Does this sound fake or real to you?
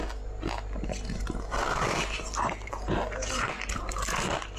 real